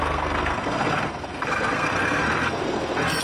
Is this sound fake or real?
fake